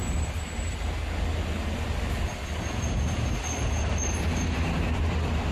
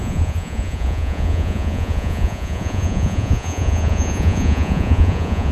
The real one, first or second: first